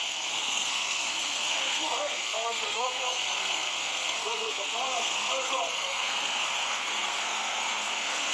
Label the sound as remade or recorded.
remade